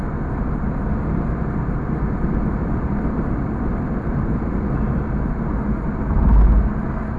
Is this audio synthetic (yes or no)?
no